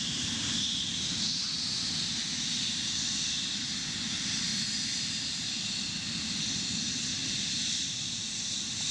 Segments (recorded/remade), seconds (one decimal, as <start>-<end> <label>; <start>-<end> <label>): 0.0-4.5 recorded; 4.5-5.1 remade; 5.1-7.2 recorded; 7.2-8.3 remade; 8.3-8.9 recorded

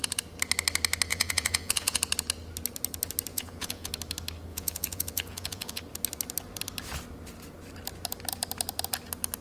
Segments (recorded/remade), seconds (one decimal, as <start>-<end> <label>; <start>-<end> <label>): 0.0-1.1 recorded; 1.1-2.0 remade; 2.0-3.3 recorded; 3.3-3.9 remade; 3.9-4.5 recorded; 4.5-5.8 remade; 5.8-9.4 recorded

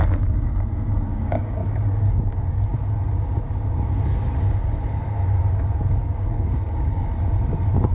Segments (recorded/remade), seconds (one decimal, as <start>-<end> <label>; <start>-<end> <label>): 0.0-1.6 remade; 1.6-2.1 recorded; 2.1-2.7 remade; 2.7-6.0 recorded; 6.0-7.1 remade; 7.1-7.9 recorded

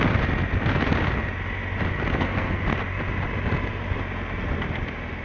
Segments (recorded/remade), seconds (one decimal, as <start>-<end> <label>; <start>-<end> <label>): 0.0-2.1 recorded; 2.1-2.6 remade; 2.6-5.2 recorded

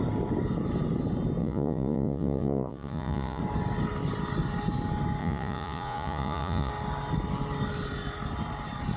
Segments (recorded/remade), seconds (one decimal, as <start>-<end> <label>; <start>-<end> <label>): 0.0-1.4 recorded; 1.4-3.4 remade; 3.4-5.2 recorded; 5.2-6.7 remade; 6.7-9.0 recorded